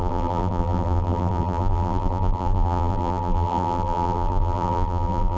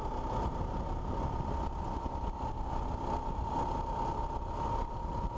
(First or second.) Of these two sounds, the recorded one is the second